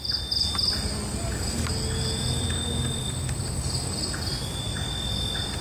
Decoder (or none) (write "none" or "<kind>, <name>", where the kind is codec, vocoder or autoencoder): none